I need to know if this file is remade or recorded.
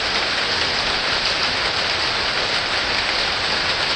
recorded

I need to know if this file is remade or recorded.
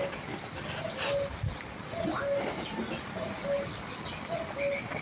recorded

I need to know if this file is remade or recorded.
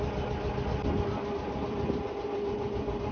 recorded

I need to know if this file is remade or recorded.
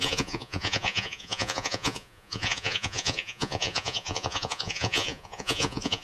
remade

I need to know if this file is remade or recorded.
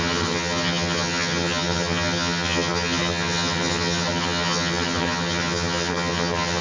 remade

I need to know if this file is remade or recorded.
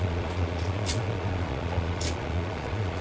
remade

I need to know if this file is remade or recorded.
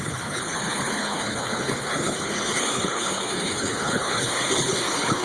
remade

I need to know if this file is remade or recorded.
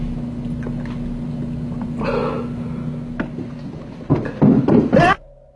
recorded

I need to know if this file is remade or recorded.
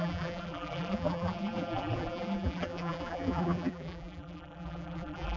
remade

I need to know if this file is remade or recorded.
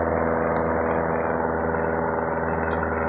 recorded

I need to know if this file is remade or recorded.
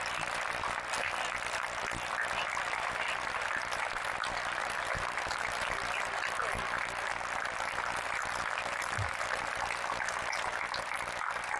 recorded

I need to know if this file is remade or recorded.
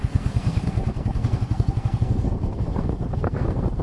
remade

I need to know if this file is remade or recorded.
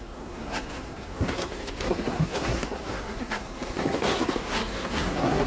remade